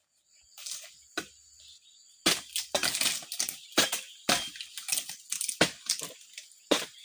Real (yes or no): yes